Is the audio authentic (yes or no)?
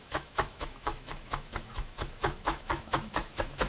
no